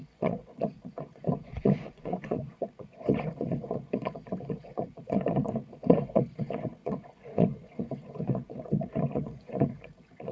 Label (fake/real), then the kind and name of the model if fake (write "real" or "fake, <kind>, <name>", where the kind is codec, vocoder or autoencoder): fake, vocoder, Vocos